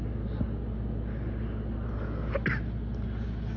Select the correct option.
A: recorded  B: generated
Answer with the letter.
A